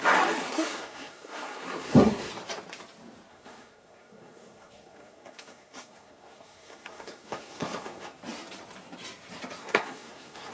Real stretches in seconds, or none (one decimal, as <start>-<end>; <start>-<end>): 0.0-0.4; 2.3-3.3; 8.2-9.6